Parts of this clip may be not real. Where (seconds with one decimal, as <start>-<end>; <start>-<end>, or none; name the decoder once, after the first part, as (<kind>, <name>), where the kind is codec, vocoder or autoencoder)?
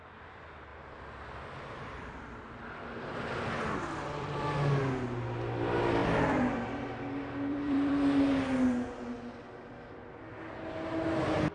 0.7-4.5 (vocoder, BigVGAN v2); 6.0-7.9